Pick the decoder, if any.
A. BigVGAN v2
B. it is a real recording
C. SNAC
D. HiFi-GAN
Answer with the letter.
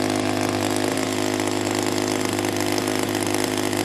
B